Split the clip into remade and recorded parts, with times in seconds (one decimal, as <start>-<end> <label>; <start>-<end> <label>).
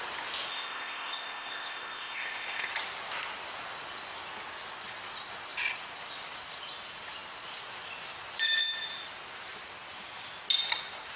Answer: 0.0-0.5 recorded; 0.5-2.7 remade; 2.7-11.2 recorded